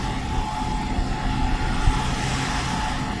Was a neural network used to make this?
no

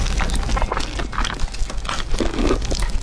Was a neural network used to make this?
no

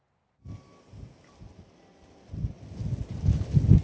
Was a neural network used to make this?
no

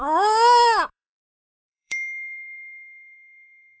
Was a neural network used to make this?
yes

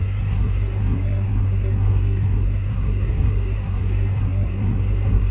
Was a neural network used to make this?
yes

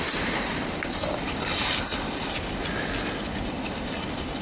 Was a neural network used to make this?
no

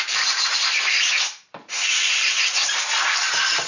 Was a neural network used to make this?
yes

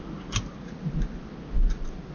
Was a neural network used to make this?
no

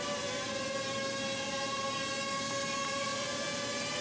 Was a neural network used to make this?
no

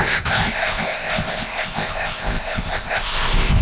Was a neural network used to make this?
yes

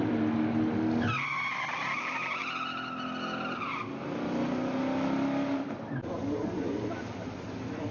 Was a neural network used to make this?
no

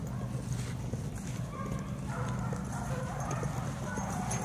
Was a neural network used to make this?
no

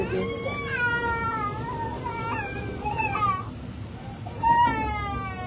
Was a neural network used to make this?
no